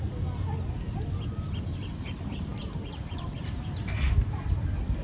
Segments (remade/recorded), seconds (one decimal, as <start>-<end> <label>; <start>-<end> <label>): 0.0-5.0 recorded